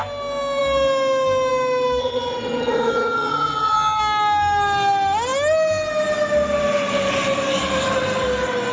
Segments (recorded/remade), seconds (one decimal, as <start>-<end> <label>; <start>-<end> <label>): 0.0-2.0 recorded; 2.0-4.0 remade; 4.0-8.7 recorded